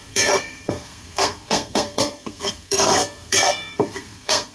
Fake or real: fake